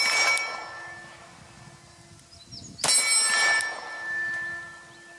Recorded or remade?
recorded